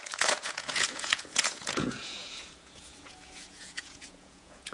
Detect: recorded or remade remade